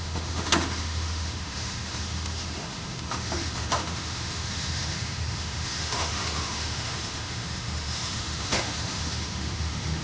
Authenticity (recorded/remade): remade